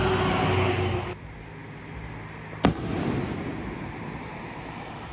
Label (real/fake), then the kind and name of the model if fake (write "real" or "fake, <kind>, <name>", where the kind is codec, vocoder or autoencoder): real